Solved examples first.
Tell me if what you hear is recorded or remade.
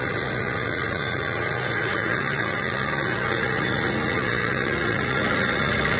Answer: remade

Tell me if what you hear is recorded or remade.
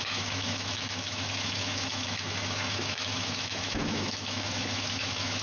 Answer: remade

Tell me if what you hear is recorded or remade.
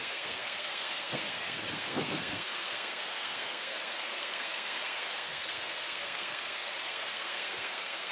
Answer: remade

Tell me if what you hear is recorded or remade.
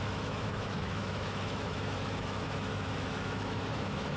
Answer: remade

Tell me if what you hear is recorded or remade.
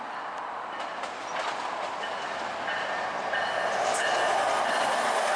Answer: recorded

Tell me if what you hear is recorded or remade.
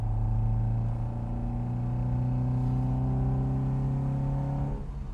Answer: recorded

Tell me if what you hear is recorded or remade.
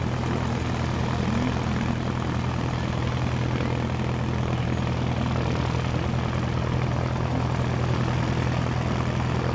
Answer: recorded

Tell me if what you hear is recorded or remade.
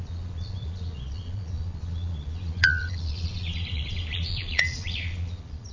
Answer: remade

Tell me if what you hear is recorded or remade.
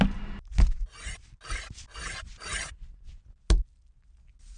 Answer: recorded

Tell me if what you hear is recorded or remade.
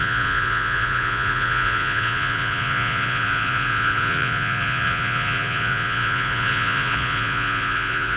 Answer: remade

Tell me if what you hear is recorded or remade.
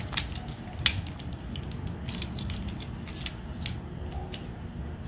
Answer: recorded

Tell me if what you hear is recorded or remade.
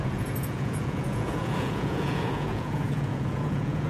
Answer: remade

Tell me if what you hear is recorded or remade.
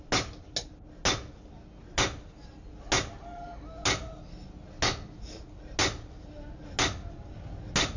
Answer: recorded